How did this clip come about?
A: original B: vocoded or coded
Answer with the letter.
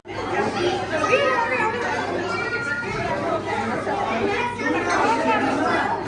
A